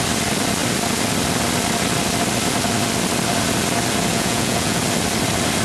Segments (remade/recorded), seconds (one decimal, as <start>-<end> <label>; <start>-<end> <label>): 0.0-4.1 recorded; 4.1-4.8 remade; 4.8-5.6 recorded